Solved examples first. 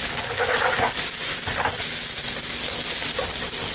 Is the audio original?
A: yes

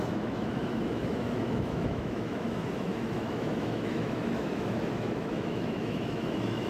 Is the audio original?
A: no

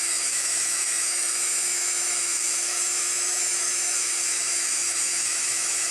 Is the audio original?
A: no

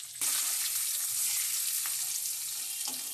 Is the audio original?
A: yes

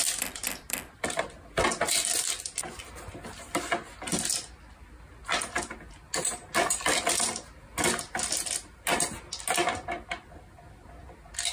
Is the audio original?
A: yes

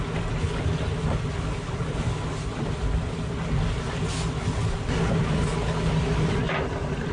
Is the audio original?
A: yes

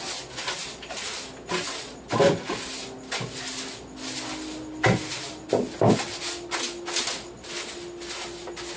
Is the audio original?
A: yes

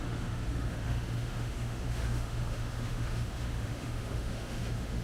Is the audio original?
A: no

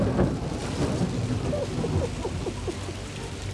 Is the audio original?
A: yes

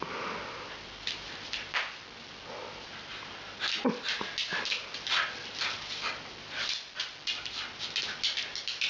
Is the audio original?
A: yes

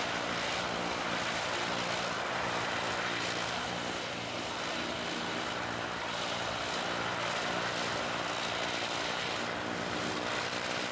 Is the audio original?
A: yes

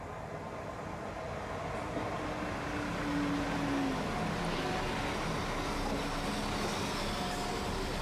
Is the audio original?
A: yes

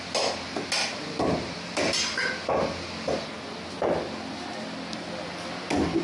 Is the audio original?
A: yes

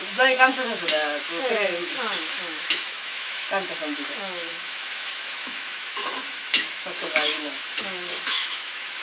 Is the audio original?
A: no